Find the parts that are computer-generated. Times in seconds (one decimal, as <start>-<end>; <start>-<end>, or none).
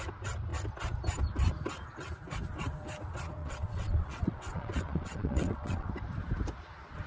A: 3.4-5.9